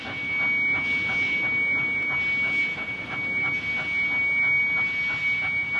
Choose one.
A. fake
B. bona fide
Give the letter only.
B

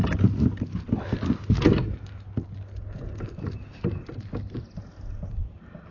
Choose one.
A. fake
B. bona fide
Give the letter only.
B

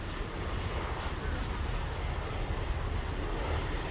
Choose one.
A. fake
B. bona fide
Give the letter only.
B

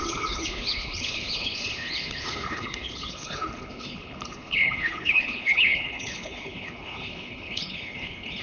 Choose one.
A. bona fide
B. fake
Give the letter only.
B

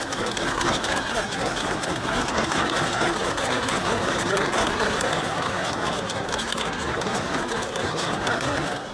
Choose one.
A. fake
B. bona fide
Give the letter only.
A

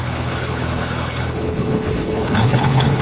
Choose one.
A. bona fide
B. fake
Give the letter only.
B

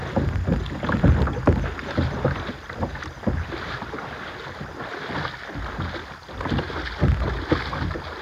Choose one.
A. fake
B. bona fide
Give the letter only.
B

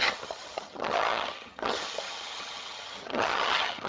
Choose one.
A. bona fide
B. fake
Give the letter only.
B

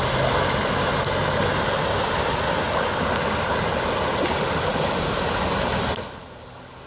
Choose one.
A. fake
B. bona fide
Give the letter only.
B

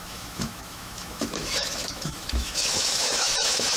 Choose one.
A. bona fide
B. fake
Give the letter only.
B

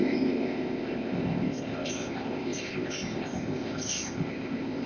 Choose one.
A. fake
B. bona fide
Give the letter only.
A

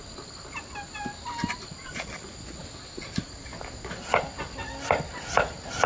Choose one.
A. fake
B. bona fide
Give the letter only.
B